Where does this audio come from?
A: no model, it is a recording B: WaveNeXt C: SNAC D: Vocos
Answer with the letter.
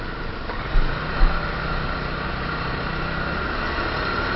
A